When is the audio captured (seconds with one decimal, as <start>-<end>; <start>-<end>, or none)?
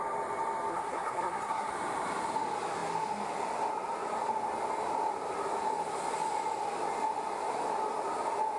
0.0-0.7; 1.7-8.6